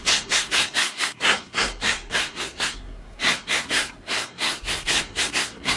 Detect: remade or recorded remade